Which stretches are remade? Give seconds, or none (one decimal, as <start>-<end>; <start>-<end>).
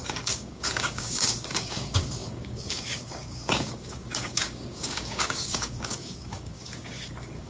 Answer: 0.0-7.5